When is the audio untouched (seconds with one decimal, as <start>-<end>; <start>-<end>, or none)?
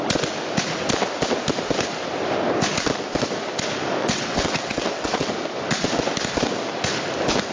0.0-4.0; 5.3-7.5